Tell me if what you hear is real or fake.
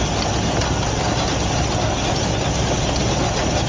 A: real